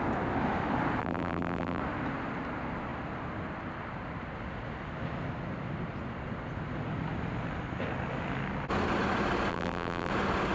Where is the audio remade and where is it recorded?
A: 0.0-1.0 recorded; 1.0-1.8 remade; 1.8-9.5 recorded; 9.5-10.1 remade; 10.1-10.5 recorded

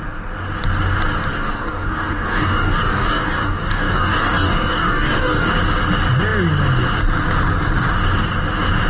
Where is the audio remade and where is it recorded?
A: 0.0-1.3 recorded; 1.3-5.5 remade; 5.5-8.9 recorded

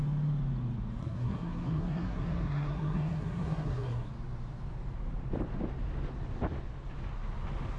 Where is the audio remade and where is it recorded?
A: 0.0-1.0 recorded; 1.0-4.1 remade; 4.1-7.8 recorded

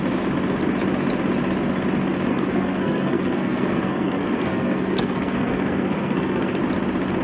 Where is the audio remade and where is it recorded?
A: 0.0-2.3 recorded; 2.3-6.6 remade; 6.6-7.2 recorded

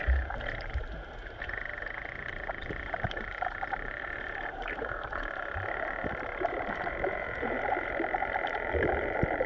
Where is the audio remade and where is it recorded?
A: 0.0-0.9 remade; 0.9-2.1 recorded; 2.1-9.5 remade

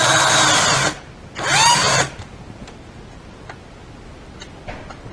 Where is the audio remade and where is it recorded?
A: 0.0-5.1 recorded